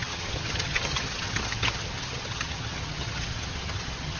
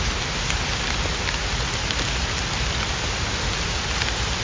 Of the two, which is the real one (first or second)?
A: second